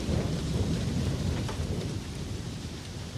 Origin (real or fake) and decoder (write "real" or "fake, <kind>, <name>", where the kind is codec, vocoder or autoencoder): fake, vocoder, BigVGAN v2